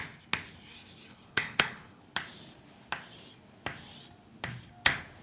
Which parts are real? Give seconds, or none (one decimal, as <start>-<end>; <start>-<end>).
0.0-1.1; 2.0-5.2